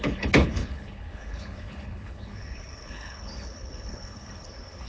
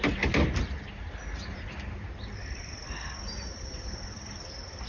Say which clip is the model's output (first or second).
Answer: first